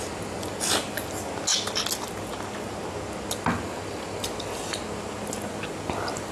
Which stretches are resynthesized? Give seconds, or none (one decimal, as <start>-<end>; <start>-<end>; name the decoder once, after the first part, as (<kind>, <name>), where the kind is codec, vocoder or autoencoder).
none

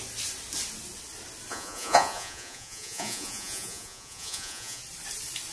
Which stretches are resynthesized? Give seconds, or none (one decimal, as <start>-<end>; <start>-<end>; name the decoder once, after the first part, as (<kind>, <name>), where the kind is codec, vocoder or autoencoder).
1.5-4.8 (vocoder, Vocos)

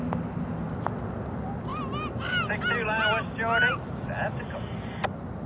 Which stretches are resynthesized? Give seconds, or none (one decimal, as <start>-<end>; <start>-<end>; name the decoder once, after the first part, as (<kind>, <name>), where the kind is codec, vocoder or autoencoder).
none

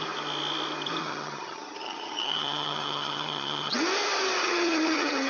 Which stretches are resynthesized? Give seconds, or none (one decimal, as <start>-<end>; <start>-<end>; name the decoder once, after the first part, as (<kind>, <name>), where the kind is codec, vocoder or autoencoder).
1.0-3.8 (vocoder, HiFi-GAN); 4.4-5.3

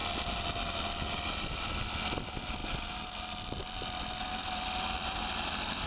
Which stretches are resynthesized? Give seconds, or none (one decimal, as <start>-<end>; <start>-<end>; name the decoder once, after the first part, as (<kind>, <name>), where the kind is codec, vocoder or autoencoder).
none

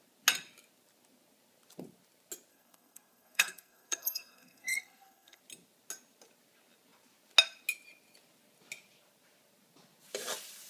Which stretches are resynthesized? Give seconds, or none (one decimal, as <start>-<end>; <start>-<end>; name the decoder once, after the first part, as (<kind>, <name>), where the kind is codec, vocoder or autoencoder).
2.5-5.4 (codec, SNAC)

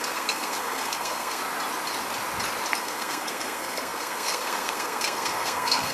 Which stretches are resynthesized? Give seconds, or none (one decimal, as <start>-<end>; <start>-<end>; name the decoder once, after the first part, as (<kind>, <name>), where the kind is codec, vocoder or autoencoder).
0.0-1.4 (codec, SNAC); 2.8-5.9